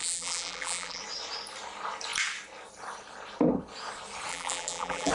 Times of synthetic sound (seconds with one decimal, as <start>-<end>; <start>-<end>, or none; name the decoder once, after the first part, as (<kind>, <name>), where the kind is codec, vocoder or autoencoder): 0.0-1.0 (vocoder, BigVGAN v2); 4.3-5.1